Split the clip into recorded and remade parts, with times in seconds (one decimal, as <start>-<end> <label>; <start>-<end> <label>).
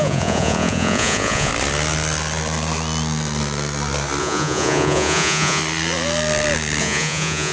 0.0-1.5 remade; 1.5-4.2 recorded; 4.2-5.6 remade; 5.6-6.8 recorded; 6.8-7.5 remade